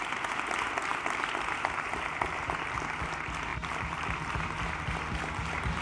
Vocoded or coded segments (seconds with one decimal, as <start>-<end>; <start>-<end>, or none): none